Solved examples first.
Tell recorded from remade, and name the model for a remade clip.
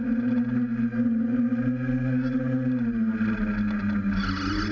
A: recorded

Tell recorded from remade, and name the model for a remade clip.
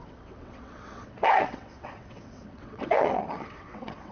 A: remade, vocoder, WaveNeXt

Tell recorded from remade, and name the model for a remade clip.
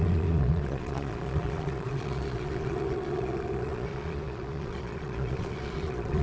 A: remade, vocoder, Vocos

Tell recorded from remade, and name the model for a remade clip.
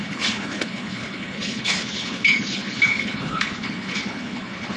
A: remade, codec, HILCodec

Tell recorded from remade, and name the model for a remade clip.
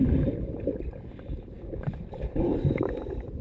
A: recorded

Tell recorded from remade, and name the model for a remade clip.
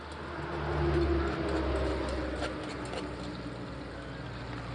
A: recorded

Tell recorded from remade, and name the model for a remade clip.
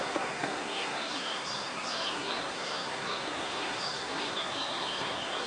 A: remade, codec, SNAC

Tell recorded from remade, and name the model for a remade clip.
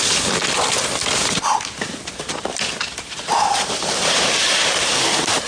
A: remade, vocoder, BigVGAN v2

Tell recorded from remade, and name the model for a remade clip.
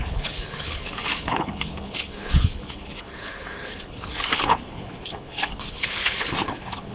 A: remade, codec, HILCodec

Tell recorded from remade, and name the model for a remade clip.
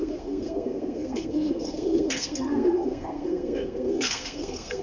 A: remade, codec, SNAC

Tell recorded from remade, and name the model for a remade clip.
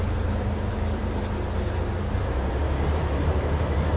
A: remade, vocoder, BigVGAN v2